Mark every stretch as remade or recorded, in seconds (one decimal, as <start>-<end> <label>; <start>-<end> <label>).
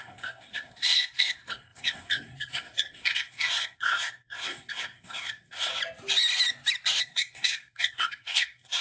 0.0-5.7 remade; 5.7-7.0 recorded; 7.0-8.8 remade